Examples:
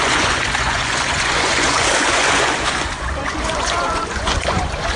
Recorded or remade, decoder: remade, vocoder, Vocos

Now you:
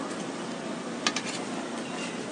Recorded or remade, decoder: recorded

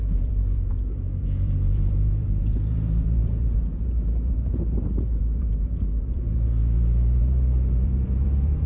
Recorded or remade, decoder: remade, vocoder, Vocos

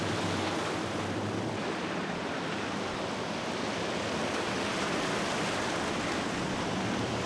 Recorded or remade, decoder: recorded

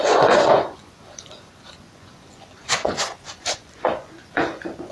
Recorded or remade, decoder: remade, vocoder, Vocos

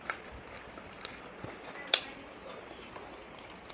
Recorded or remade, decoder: recorded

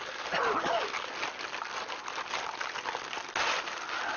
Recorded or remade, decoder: recorded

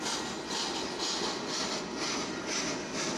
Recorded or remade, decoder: recorded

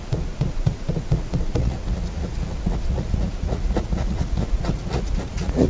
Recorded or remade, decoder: remade, vocoder, Vocos